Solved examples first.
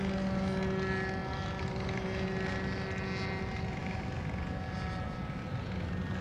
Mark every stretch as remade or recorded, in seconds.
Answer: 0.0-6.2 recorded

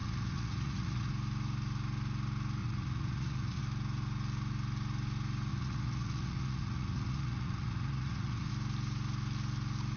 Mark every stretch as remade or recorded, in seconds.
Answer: 0.0-1.1 remade; 1.1-2.6 recorded; 2.6-3.6 remade; 3.6-5.5 recorded; 5.5-8.5 remade; 8.5-10.0 recorded

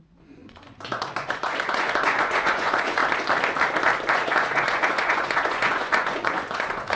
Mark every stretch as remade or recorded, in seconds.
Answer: 0.0-3.0 remade; 3.0-4.1 recorded; 4.1-7.0 remade

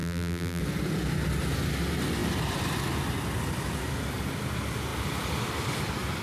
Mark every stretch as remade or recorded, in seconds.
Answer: 0.0-0.6 remade; 0.6-6.2 recorded

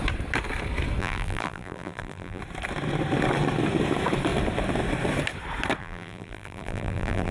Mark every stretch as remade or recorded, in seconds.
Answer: 0.0-1.0 recorded; 1.0-2.4 remade; 2.4-5.8 recorded; 5.8-7.3 remade

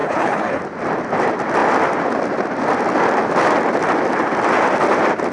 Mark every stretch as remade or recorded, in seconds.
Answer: 0.0-0.6 remade; 0.6-5.3 recorded

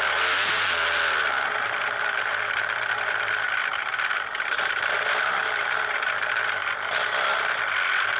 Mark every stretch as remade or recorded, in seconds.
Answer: 0.0-8.2 recorded